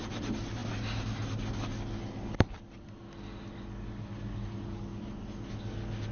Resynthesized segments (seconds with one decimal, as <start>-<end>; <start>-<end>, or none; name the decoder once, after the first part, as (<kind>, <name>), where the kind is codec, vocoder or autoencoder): none